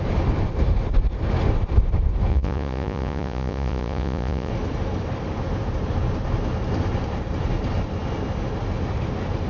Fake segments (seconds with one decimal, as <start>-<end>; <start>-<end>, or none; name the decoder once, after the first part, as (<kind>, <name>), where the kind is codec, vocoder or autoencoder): 2.3-4.5 (vocoder, Vocos)